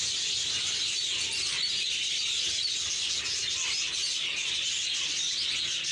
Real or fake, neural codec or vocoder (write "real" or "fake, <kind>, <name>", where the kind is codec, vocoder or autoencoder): real